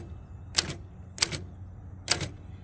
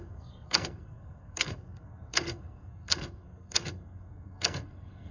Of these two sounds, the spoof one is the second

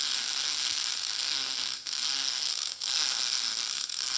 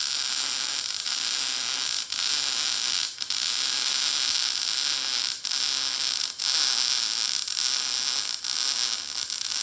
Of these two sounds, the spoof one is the first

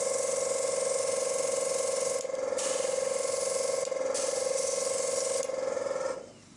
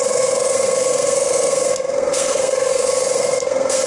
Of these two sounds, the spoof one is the second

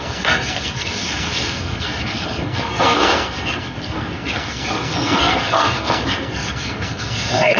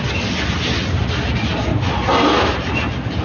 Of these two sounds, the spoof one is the first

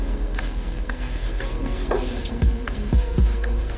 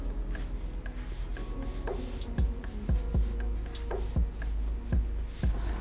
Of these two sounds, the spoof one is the first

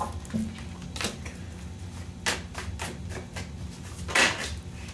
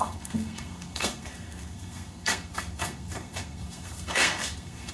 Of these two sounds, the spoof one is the second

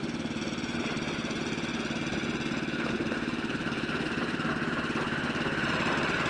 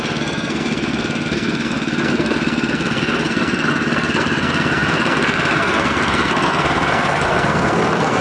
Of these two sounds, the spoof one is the second